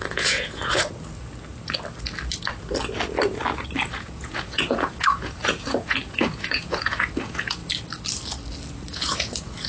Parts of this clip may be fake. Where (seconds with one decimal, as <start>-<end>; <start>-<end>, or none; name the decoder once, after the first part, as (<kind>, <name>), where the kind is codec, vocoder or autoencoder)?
0.0-0.6 (vocoder, Vocos); 3.9-7.6; 8.9-9.7